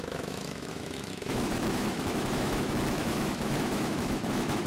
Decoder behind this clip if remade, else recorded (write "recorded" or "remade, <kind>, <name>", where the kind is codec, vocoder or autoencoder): remade, autoencoder, DAC-VAE